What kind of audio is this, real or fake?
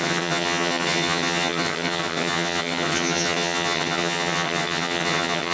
fake